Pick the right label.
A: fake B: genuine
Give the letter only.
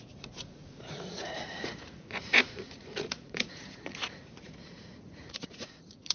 A